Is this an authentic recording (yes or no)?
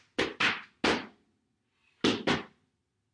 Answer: yes